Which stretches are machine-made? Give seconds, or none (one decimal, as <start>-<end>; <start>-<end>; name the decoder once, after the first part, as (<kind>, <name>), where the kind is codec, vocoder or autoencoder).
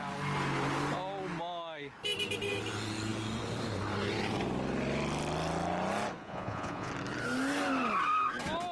6.2-6.9 (vocoder, Vocos)